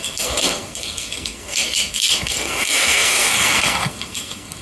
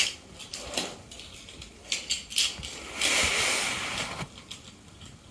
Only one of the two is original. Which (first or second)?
second